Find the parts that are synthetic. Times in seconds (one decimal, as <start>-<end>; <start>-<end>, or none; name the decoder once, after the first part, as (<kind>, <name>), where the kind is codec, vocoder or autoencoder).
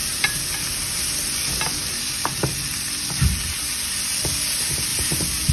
4.9-5.5 (vocoder, BigVGAN v2)